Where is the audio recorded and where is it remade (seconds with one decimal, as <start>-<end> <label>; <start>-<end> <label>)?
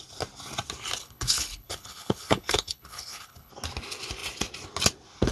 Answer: 0.0-1.0 recorded; 1.0-3.5 remade; 3.5-5.3 recorded